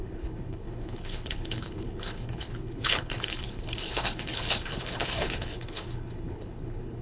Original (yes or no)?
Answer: no